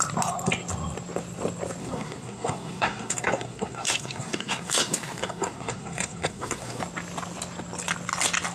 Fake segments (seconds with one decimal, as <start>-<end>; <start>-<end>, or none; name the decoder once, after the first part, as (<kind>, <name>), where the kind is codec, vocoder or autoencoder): 1.8-6.8 (codec, SNAC)